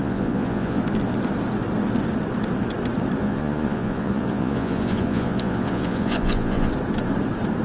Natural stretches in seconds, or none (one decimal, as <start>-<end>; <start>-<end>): 0.8-3.2; 6.7-7.6